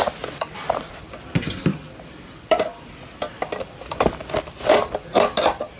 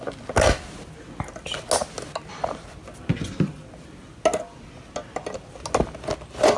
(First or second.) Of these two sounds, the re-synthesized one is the first